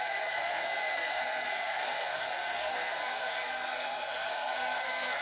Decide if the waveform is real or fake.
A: fake